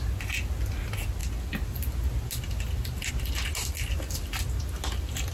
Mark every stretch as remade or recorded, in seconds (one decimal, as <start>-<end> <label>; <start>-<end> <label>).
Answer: 0.0-5.3 recorded